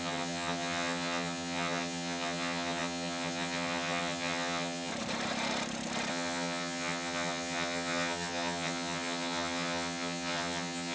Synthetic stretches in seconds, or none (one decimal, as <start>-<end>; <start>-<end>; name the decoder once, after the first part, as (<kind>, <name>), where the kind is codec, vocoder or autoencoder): 0.0-4.9 (vocoder, HiFi-GAN); 6.1-10.9